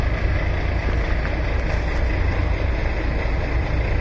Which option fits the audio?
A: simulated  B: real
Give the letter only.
B